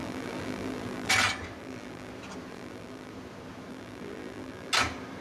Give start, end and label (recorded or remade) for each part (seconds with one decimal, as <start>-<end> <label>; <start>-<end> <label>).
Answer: 0.0-1.1 remade; 1.1-1.6 recorded; 1.6-2.1 remade; 2.1-2.5 recorded; 2.5-3.1 remade; 3.1-3.7 recorded; 3.7-4.7 remade; 4.7-5.2 recorded